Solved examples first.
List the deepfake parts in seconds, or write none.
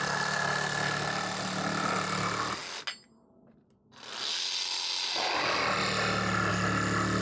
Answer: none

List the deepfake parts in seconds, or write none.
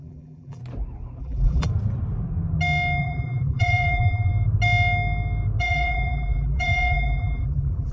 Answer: 0.0-0.6; 1.2-1.7; 3.0-4.3; 5.6-7.9